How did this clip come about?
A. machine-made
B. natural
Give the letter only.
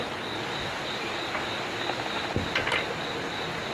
B